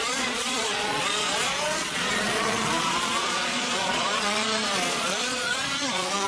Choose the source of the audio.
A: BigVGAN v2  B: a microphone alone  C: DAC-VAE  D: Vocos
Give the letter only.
D